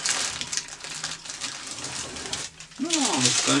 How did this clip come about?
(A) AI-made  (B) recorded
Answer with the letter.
A